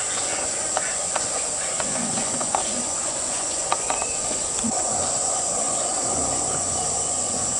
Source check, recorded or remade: remade